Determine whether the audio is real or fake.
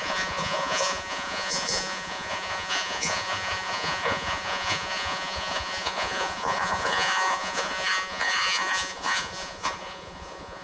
fake